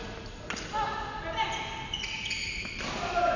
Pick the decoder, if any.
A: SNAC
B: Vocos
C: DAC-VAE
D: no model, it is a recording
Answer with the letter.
D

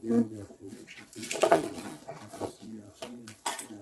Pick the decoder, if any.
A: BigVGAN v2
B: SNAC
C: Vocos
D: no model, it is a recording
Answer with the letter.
C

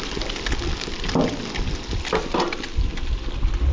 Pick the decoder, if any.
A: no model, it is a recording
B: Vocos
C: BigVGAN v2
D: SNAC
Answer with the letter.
A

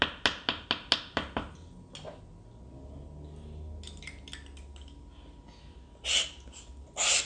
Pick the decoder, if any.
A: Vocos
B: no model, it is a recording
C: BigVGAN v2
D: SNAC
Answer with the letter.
B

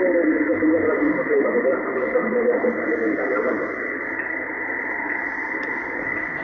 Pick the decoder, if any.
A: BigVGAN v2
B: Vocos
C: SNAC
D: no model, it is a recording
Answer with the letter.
A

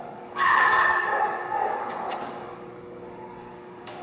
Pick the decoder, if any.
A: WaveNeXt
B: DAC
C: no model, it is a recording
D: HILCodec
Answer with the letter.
B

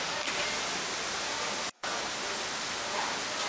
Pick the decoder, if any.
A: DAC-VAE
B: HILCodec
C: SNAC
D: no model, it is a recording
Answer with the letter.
D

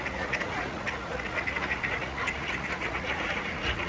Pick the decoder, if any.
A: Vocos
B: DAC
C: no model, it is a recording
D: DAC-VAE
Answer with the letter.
A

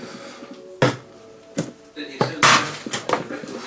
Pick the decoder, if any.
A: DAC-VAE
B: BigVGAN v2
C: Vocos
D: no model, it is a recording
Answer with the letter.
D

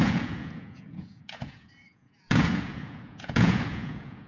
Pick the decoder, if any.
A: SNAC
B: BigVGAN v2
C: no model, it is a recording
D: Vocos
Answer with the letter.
D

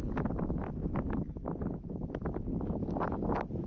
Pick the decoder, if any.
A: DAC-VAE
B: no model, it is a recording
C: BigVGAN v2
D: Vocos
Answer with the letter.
B